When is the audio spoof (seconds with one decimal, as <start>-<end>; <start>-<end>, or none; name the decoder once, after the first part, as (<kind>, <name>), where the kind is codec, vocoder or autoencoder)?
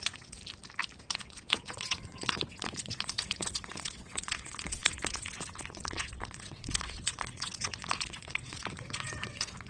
0.0-0.4 (vocoder, WaveNeXt); 1.0-9.7